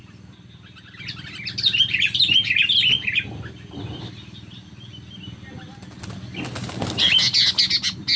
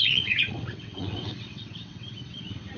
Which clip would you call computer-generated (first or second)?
second